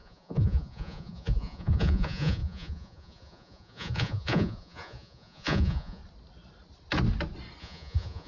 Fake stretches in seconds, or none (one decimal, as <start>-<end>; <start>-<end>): 0.0-6.0; 7.6-8.3